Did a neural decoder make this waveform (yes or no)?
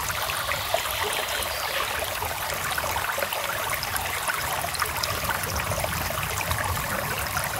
no